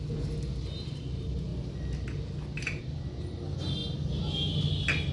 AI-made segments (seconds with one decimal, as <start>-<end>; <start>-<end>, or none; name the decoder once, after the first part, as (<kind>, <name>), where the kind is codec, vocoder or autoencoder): none